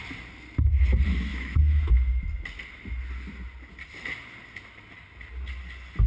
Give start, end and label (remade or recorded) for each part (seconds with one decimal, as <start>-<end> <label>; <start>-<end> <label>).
0.0-1.3 recorded; 1.3-1.9 remade; 1.9-6.1 recorded